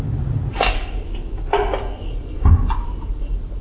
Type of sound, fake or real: real